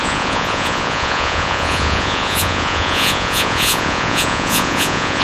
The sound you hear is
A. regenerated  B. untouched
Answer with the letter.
A